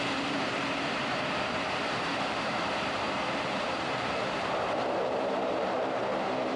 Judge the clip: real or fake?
fake